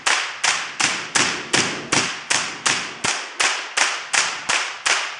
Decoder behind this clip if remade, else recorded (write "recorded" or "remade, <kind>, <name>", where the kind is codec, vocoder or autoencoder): recorded